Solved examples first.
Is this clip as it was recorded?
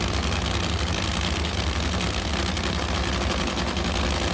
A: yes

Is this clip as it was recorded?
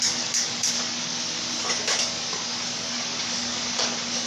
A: no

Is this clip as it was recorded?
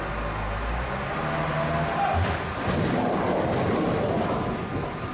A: yes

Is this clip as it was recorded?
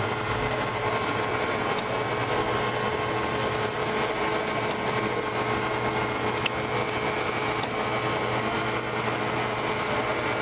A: yes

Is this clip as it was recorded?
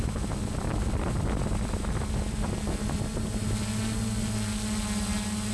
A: yes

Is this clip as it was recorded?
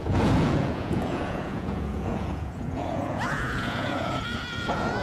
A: no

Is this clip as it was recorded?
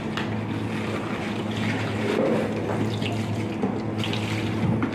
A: yes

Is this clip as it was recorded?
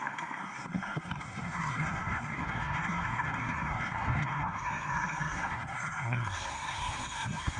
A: no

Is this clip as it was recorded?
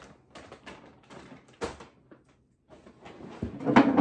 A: yes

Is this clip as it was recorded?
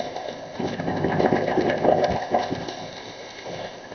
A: no